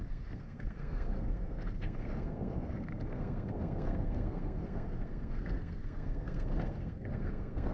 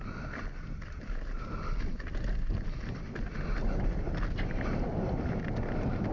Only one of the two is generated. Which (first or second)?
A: first